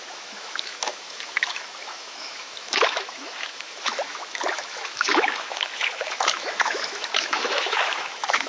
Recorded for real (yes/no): no